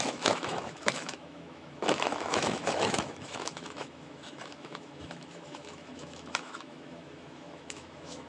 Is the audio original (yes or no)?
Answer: no